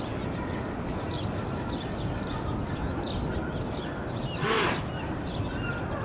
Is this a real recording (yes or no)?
yes